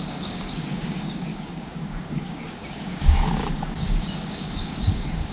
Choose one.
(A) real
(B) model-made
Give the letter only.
B